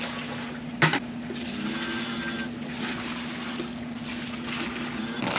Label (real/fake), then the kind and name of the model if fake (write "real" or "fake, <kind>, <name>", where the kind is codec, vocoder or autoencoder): real